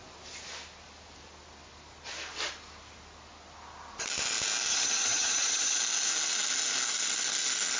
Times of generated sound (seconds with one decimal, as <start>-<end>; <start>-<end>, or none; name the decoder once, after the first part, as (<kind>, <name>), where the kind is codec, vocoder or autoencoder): 4.7-5.8 (vocoder, HiFi-GAN)